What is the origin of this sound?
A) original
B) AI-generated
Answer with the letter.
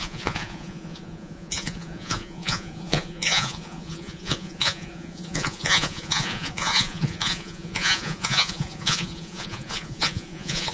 B